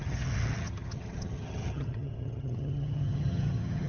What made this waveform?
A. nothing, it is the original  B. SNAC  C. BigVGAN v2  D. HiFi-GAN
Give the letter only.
D